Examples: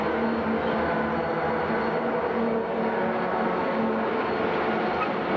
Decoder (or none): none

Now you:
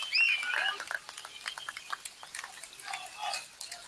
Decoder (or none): none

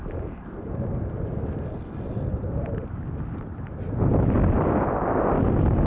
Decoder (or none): none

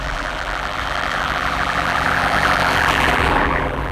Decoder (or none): vocoder, BigVGAN v2